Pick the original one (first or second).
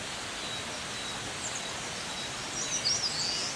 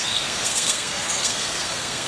first